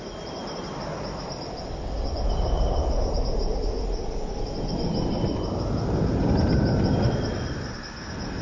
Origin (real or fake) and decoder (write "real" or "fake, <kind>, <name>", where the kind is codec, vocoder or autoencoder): real